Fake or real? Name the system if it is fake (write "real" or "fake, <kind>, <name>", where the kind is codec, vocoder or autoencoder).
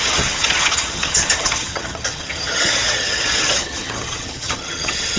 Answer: fake, vocoder, HiFi-GAN